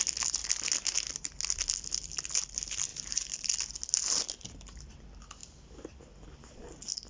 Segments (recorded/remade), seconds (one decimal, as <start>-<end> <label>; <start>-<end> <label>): 0.0-7.1 recorded